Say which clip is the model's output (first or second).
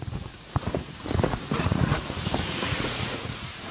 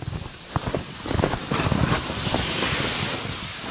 first